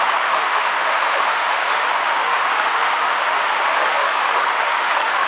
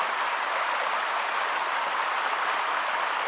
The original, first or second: second